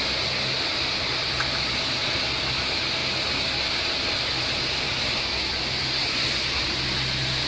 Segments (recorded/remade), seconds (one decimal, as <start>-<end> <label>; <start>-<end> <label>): 0.0-7.5 recorded